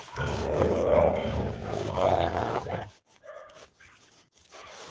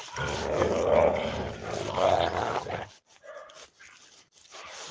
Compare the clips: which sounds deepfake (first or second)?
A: first